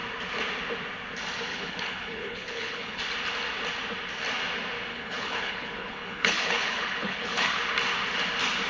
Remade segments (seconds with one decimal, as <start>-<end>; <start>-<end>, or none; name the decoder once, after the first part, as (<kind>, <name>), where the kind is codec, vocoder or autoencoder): 1.5-3.0 (codec, HILCodec); 4.9-7.7

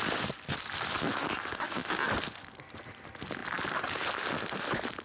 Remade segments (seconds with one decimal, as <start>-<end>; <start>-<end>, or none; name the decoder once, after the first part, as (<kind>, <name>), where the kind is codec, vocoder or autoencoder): none